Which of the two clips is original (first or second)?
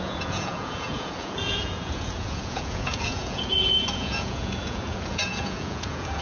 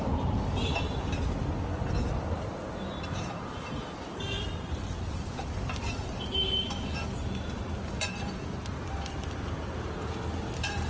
second